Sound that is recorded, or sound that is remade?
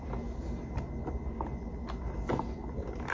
recorded